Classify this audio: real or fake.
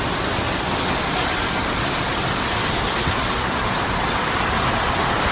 real